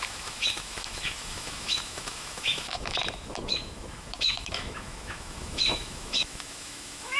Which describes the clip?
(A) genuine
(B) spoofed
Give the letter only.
B